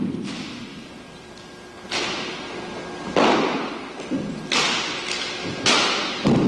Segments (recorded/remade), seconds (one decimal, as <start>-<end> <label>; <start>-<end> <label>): 0.0-6.5 recorded